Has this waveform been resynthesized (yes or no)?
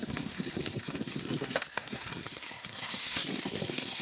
yes